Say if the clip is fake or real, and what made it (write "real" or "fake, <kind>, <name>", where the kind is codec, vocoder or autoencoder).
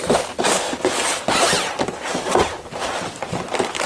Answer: real